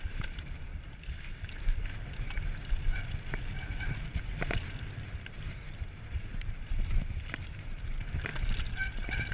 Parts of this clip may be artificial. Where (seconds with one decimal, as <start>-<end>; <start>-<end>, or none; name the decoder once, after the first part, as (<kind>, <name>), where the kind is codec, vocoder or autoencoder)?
0.0-0.7 (vocoder, BigVGAN v2); 5.1-8.3; 8.9-9.3